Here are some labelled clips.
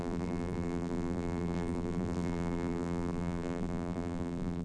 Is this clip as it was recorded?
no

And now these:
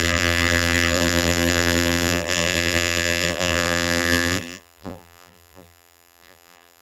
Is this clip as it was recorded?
no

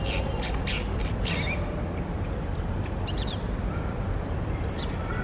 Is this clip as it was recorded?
yes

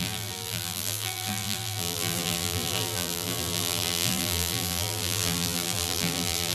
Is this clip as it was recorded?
no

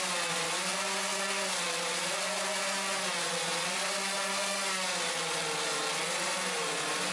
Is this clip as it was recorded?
yes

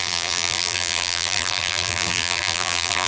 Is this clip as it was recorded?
no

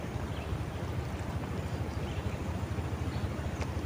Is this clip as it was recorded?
no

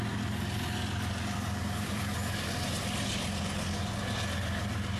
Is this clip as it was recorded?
yes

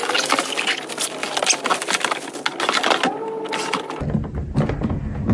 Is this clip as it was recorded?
yes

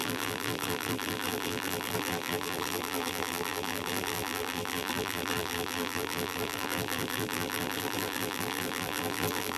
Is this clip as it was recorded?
no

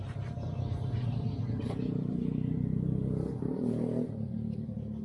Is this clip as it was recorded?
no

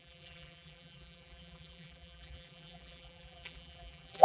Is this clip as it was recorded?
no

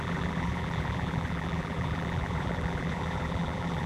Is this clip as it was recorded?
no